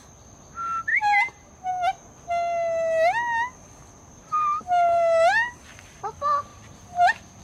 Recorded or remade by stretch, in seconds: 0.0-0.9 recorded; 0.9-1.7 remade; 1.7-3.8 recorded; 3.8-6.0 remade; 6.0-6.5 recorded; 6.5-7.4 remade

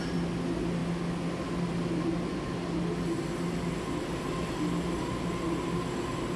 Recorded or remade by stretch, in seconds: 0.0-6.4 recorded